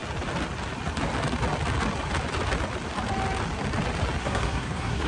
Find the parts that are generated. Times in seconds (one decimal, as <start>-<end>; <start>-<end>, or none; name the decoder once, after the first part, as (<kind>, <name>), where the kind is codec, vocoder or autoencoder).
4.2-5.1 (codec, SNAC)

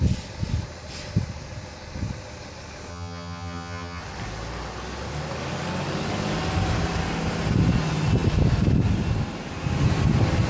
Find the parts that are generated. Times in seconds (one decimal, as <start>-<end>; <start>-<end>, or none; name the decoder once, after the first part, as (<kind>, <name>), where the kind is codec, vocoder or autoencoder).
2.9-4.0 (vocoder, HiFi-GAN)

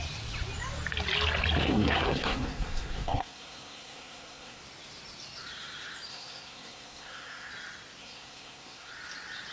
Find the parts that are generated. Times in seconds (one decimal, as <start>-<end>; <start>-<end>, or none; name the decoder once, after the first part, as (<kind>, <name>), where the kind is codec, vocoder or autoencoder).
1.6-4.6 (codec, SNAC); 6.1-7.5; 8.0-8.9

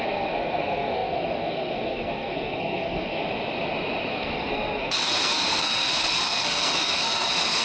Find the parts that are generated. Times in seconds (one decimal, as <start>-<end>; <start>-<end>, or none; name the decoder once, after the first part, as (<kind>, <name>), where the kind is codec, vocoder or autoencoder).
0.0-3.2 (codec, SNAC); 4.1-7.6

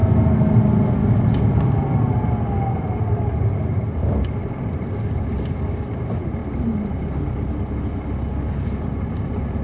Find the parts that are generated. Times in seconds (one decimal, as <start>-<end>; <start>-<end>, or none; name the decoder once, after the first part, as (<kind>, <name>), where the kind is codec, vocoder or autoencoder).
1.0-1.7 (vocoder, BigVGAN v2); 4.0-5.8

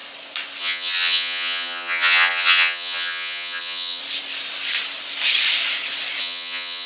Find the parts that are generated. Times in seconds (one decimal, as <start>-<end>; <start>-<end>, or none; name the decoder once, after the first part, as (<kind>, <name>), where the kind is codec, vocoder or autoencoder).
0.6-4.0 (vocoder, HiFi-GAN); 6.2-6.9

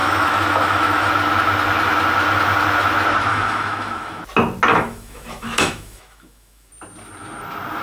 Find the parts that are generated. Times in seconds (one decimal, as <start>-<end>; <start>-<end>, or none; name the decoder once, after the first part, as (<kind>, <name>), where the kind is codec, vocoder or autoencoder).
0.0-1.1 (autoencoder, DAC-VAE); 3.3-4.2; 4.7-6.7

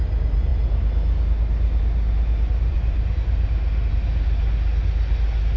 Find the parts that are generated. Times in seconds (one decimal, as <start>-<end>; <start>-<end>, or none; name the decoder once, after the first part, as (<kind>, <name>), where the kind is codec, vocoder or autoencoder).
none